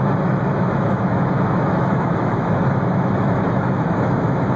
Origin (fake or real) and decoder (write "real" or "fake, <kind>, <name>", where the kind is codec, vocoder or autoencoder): fake, autoencoder, DAC-VAE